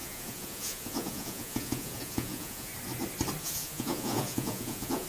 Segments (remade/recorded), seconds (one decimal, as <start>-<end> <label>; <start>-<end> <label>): 0.0-2.7 remade; 2.7-3.4 recorded; 3.4-5.1 remade